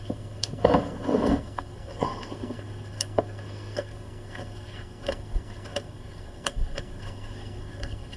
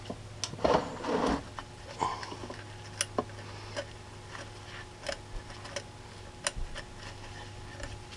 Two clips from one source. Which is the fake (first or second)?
first